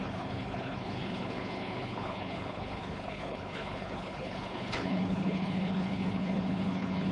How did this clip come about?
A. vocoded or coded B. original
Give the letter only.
A